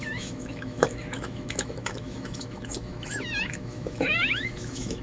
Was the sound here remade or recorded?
remade